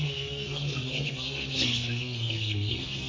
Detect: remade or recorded remade